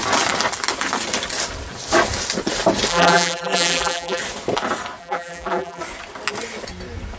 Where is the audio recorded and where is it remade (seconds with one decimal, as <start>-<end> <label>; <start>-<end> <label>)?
0.0-2.9 recorded; 2.9-4.2 remade; 4.2-5.0 recorded; 5.0-5.8 remade; 5.8-7.2 recorded